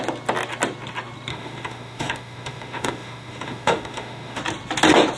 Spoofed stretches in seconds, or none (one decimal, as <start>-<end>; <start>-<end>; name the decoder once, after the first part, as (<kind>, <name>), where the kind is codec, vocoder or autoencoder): 1.3-4.4 (autoencoder, DAC-VAE)